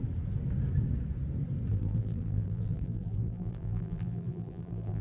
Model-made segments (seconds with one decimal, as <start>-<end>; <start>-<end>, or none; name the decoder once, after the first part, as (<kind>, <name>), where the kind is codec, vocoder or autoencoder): 1.7-5.0 (vocoder, BigVGAN v2)